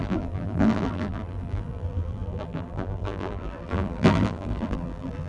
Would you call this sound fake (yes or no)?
yes